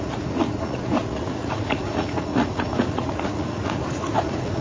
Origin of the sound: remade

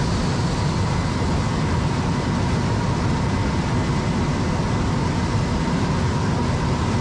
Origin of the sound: recorded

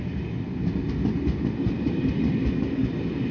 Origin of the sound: recorded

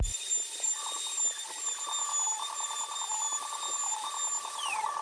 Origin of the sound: recorded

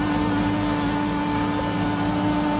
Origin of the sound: recorded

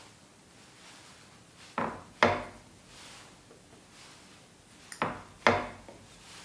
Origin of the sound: recorded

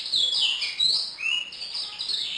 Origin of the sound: recorded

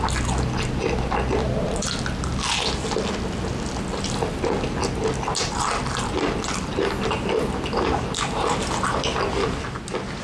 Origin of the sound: recorded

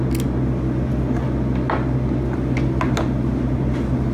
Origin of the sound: recorded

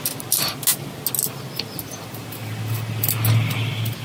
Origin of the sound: recorded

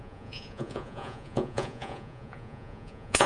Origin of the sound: remade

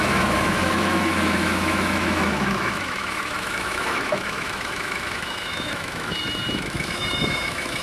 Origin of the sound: remade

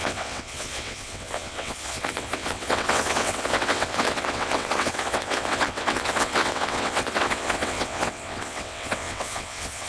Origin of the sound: remade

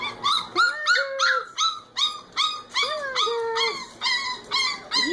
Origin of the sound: recorded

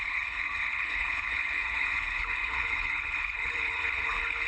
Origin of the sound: remade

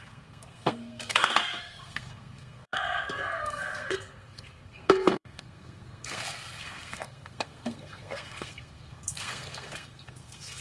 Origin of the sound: remade